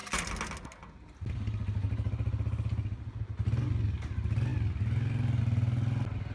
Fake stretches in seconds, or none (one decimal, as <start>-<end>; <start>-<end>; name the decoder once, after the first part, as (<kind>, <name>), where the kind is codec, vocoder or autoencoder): none

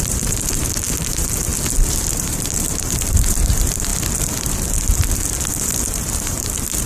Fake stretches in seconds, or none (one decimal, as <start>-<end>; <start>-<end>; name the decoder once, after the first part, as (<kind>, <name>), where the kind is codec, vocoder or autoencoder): 0.0-1.5 (vocoder, BigVGAN v2); 2.1-3.9; 5.5-6.9

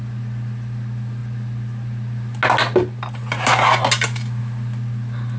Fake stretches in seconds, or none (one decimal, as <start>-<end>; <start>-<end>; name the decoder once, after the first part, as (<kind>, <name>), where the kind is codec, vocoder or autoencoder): none

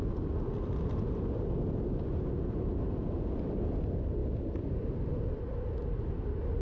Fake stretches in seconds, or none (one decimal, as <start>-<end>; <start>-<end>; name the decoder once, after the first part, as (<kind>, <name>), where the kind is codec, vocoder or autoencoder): none

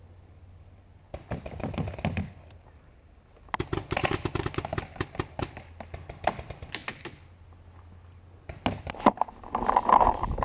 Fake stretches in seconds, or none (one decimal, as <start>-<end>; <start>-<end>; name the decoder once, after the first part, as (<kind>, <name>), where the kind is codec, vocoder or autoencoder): none

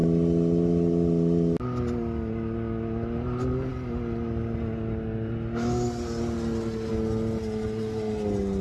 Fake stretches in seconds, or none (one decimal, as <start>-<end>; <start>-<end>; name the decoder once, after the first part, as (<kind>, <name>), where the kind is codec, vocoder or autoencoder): none